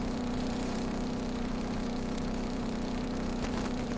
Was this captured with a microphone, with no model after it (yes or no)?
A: no